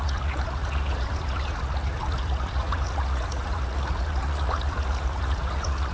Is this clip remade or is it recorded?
remade